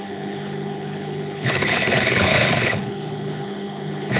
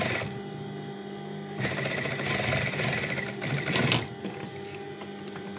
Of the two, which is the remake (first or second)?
first